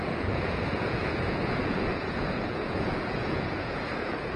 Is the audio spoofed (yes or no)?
yes